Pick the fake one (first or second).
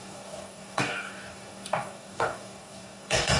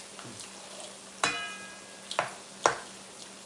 first